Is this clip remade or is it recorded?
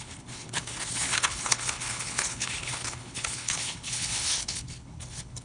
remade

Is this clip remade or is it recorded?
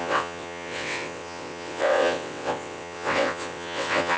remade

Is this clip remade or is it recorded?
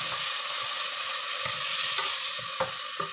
recorded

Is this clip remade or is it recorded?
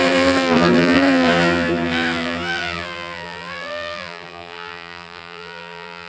remade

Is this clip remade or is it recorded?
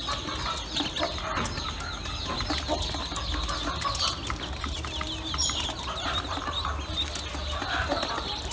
recorded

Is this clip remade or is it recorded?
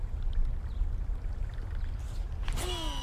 recorded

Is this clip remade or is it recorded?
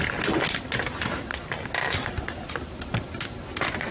recorded